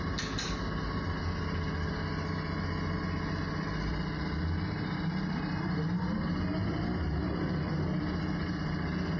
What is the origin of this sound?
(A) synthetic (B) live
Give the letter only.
B